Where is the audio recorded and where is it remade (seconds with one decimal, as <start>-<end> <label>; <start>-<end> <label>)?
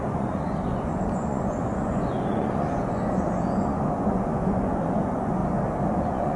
0.0-5.4 remade; 5.4-6.0 recorded; 6.0-6.4 remade